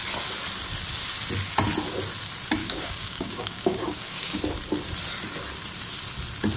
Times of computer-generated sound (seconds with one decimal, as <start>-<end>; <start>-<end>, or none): 2.6-4.4